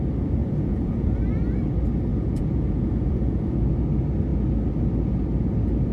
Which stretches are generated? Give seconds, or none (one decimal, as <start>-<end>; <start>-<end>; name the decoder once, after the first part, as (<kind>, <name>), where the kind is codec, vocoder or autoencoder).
0.4-1.2 (vocoder, Vocos); 2.1-3.8